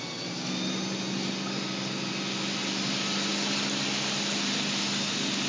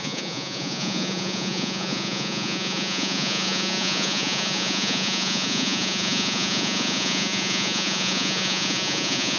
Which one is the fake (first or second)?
second